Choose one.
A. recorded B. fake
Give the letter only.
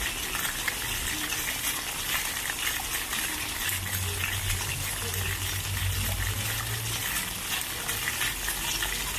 A